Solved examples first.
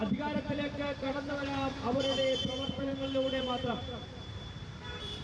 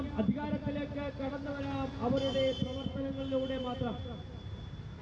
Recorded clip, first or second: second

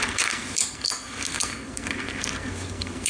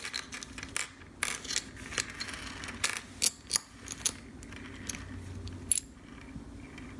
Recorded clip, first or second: second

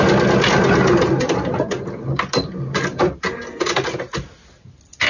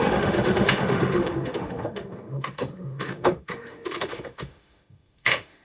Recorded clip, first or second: first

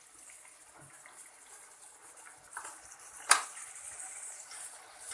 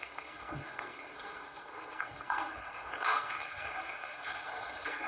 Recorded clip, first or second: first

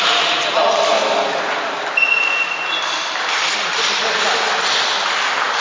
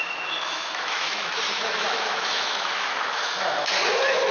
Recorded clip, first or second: first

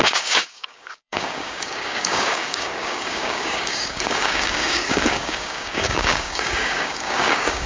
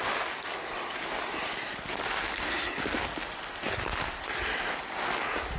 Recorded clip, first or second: second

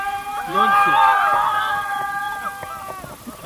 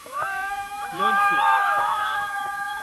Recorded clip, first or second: first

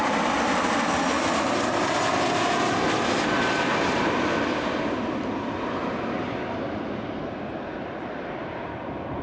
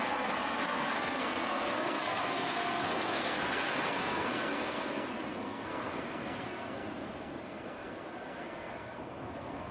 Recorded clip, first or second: first